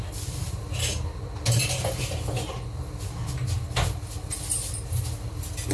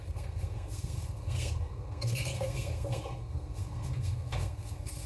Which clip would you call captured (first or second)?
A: first